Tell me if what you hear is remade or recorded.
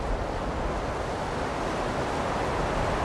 recorded